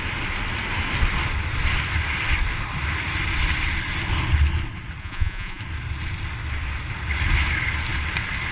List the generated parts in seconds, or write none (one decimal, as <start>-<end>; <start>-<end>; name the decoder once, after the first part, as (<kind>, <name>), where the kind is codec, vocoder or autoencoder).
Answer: 5.0-5.6 (vocoder, Vocos)